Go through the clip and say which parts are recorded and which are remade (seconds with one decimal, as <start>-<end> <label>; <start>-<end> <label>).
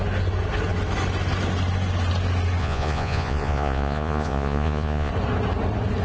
0.0-2.6 recorded; 2.6-5.1 remade; 5.1-6.0 recorded